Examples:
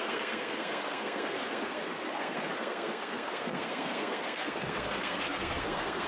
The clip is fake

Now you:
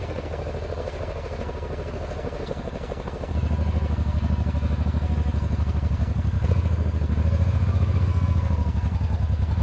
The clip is fake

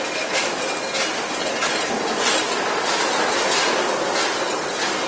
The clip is real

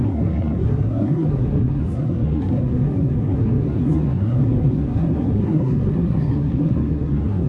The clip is fake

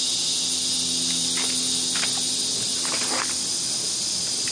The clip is real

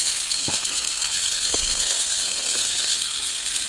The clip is fake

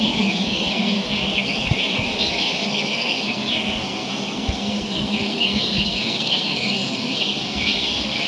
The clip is fake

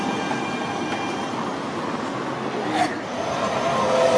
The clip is real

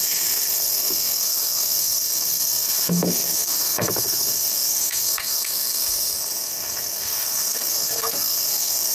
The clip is fake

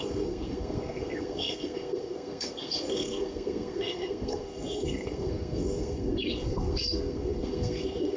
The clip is fake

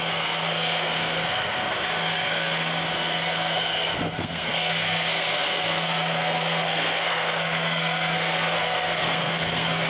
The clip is fake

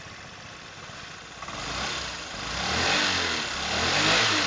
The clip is real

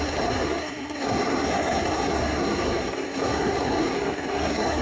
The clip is fake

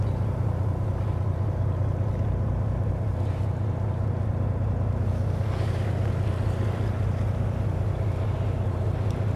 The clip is real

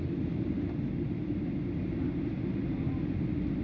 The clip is real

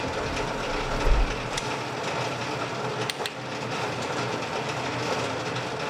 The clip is real